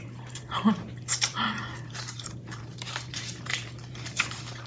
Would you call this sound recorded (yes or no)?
no